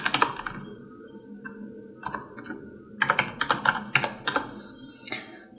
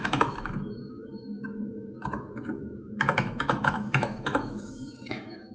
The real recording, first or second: first